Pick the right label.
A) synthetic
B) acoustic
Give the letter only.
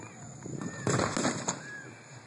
B